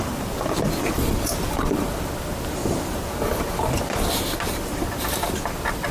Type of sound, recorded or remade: recorded